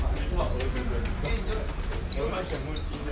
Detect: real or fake real